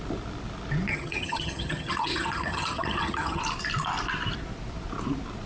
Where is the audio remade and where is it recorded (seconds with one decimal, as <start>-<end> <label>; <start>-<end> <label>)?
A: 0.0-0.9 recorded; 0.9-3.4 remade; 3.4-5.5 recorded